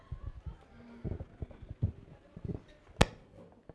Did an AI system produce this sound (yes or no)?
no